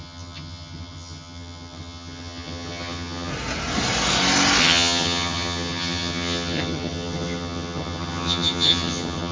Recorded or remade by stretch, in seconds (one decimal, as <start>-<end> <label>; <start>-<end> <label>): 0.0-3.3 remade; 3.3-4.6 recorded; 4.6-9.3 remade